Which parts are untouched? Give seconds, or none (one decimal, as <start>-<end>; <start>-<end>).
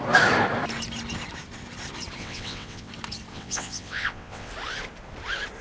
0.0-2.2; 2.9-3.3; 4.5-5.6